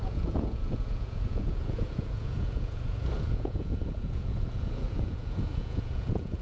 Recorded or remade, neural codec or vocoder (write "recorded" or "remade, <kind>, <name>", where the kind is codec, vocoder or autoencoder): remade, vocoder, Vocos